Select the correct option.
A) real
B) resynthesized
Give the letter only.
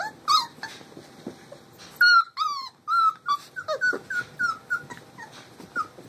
A